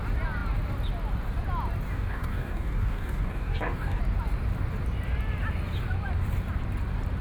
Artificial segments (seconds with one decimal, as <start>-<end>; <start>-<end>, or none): 1.9-4.0

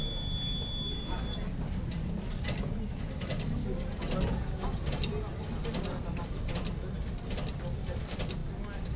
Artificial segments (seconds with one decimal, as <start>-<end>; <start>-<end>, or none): 0.0-0.9

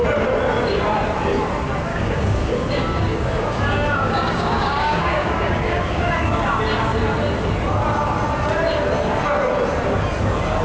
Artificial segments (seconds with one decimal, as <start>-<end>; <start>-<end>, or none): 1.9-6.6

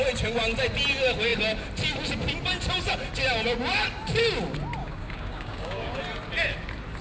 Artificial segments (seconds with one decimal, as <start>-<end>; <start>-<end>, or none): 4.8-6.0

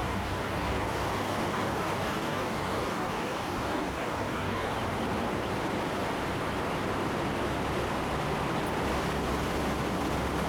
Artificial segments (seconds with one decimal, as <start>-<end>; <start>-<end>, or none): 0.0-4.7

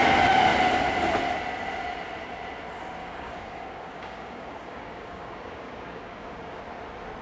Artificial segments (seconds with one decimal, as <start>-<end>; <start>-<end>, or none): 3.0-6.6

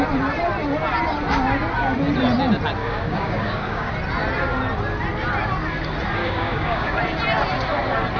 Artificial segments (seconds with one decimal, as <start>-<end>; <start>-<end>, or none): 2.8-3.9; 6.2-7.0

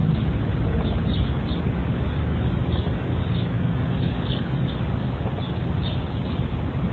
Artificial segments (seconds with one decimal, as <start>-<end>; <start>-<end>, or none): 1.8-4.7